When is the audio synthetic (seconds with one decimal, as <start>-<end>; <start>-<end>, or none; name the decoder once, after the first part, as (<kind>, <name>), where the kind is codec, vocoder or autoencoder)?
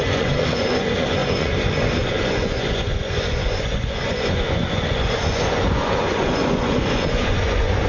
0.0-7.9 (vocoder, Vocos)